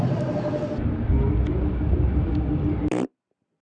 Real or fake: real